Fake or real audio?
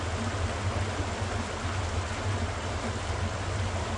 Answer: real